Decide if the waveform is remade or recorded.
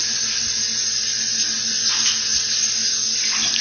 recorded